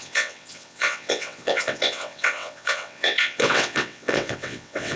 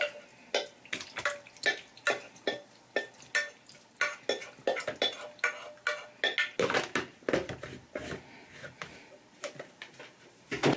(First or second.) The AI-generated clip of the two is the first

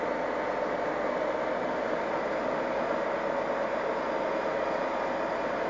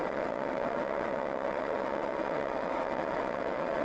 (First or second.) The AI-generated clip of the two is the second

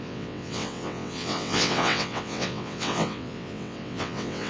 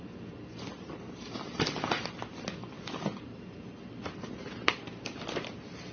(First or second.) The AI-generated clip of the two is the first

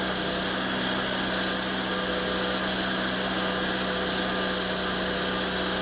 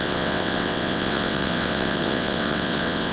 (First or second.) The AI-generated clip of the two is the second